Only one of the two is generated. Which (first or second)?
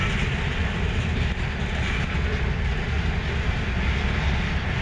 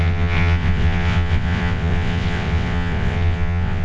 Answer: second